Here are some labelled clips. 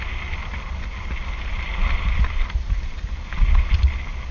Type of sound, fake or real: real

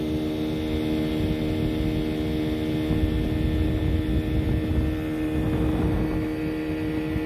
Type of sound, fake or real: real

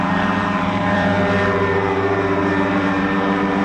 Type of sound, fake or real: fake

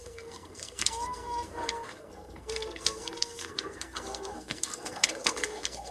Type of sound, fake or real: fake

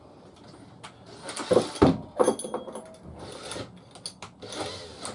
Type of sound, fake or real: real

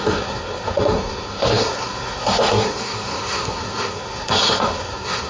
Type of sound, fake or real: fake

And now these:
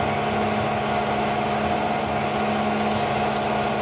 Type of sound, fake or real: real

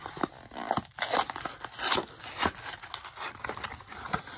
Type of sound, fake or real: real